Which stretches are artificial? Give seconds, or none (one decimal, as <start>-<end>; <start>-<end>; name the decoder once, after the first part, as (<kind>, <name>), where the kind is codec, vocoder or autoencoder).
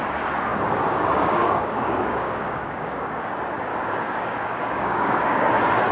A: 0.5-3.2 (codec, DAC); 3.7-5.4